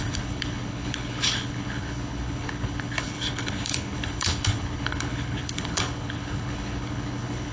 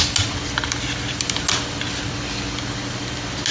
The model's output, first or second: first